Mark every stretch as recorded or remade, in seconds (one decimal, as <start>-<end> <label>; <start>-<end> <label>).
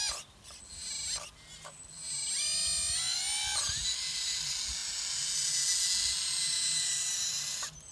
0.0-7.9 recorded